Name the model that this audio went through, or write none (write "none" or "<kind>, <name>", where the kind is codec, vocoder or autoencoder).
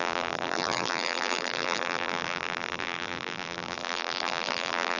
vocoder, BigVGAN v2